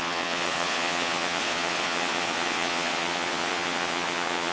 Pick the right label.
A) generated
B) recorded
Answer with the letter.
A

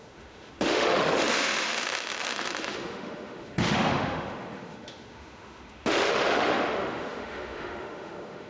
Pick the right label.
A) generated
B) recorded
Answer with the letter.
A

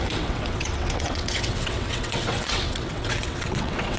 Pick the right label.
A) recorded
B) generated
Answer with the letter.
B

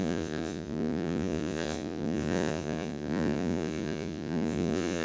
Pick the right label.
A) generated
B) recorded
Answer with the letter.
A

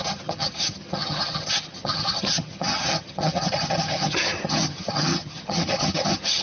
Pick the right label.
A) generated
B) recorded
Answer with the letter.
A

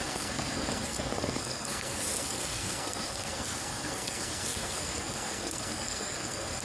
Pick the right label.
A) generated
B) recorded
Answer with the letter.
A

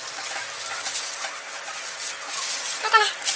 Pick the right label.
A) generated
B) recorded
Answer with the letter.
B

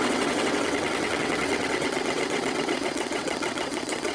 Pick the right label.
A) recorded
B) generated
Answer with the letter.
B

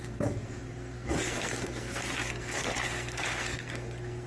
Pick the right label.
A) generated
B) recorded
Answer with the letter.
A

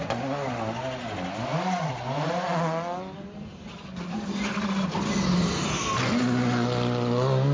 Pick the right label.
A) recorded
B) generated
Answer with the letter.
A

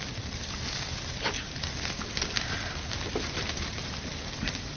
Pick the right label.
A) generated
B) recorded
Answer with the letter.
B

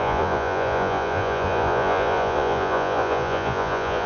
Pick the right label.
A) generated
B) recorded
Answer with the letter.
A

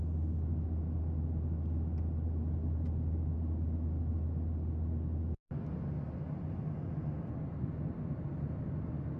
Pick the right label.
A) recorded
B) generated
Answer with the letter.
A